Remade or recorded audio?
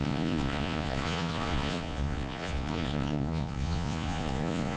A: remade